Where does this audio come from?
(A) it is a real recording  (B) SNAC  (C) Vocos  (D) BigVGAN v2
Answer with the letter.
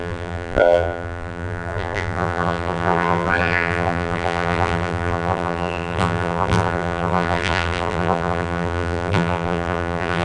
D